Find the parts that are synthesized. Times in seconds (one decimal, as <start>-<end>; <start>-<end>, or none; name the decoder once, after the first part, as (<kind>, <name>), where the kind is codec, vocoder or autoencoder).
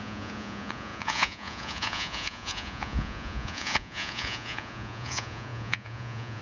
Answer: 0.0-6.4 (vocoder, Vocos)